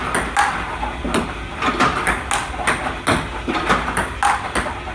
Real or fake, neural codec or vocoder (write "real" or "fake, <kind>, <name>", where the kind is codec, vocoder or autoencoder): real